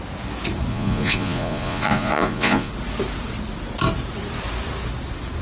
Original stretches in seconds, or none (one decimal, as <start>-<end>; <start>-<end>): 0.0-0.7; 2.7-5.4